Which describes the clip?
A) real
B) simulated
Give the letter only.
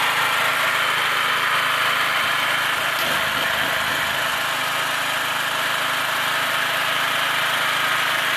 A